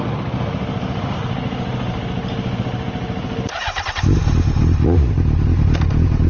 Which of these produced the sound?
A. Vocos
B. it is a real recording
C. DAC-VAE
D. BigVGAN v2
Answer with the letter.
B